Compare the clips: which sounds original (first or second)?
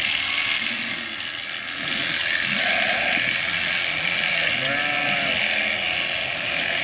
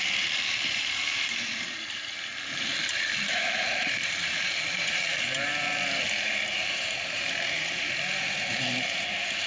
first